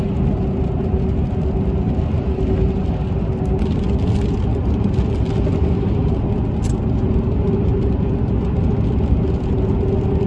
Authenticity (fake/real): real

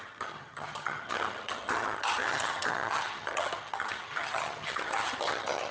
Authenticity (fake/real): fake